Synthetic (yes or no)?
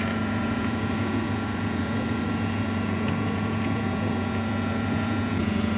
yes